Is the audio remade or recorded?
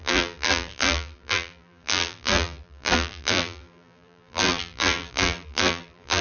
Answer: remade